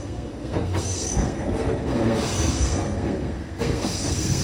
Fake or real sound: fake